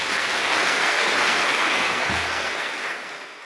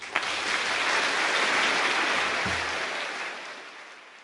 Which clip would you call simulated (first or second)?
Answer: first